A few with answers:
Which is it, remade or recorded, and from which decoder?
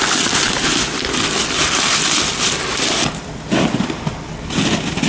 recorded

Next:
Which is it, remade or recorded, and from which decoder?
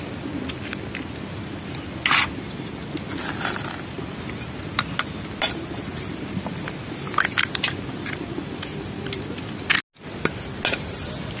recorded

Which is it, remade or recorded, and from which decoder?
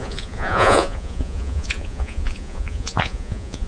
remade, vocoder, Vocos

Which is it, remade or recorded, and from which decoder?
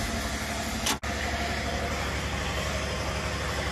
recorded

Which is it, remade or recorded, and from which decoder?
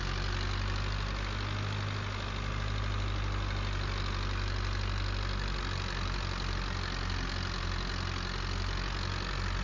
recorded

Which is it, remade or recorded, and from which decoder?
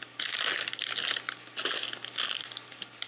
recorded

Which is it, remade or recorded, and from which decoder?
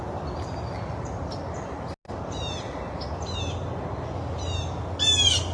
recorded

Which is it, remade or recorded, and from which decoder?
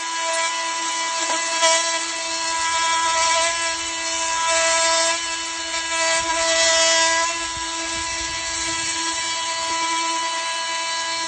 recorded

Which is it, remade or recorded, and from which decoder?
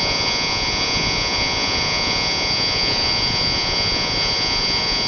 remade, vocoder, Vocos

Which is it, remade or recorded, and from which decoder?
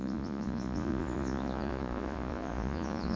remade, vocoder, Vocos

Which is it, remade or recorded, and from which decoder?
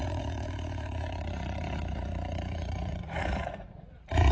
remade, vocoder, Vocos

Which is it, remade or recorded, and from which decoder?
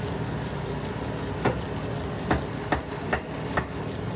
recorded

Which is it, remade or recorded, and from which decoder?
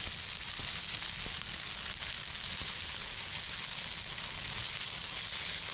recorded